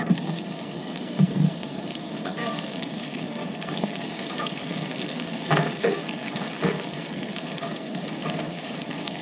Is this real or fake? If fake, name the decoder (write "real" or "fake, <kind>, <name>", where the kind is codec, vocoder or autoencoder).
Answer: fake, codec, SNAC